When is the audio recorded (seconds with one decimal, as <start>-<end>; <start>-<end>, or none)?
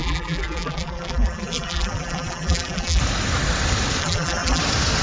3.0-4.0; 4.6-5.0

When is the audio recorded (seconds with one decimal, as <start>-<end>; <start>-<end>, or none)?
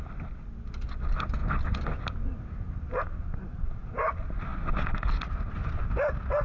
0.0-6.4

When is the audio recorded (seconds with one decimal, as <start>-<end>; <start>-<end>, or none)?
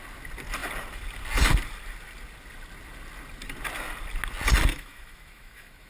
0.0-4.7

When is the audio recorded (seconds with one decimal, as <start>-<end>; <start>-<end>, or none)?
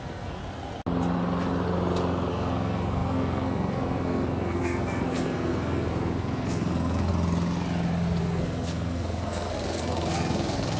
0.4-2.3; 7.1-8.2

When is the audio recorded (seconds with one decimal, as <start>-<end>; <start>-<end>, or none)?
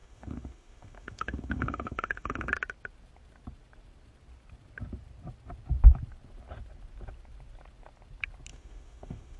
2.5-8.5